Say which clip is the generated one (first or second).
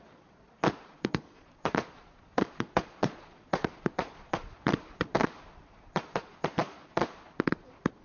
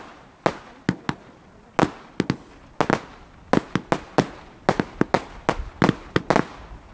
first